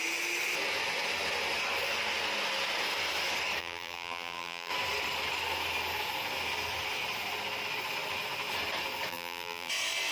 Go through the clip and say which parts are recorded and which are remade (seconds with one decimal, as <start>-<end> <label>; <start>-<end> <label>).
0.0-3.6 recorded; 3.6-4.7 remade; 4.7-9.1 recorded; 9.1-9.7 remade; 9.7-10.1 recorded